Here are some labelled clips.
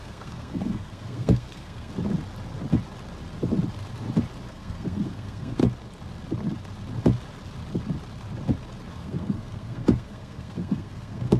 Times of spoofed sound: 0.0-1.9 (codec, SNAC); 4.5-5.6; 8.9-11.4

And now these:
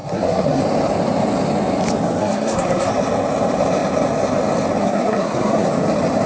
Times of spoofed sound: 0.0-0.6 (codec, SNAC); 2.2-2.9; 4.8-5.7

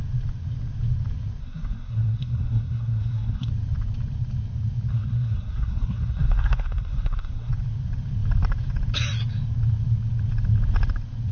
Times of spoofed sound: 1.4-3.5 (codec, SNAC); 4.9-7.5

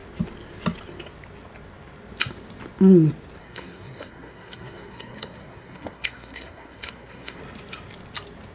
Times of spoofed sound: 3.4-7.4 (codec, SNAC)

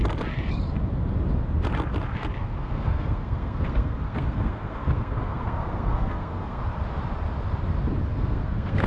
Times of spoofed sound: 2.4-6.6 (codec, SNAC); 8.1-8.9

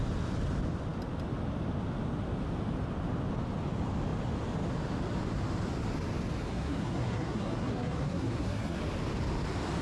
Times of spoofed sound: 6.5-8.8 (codec, SNAC)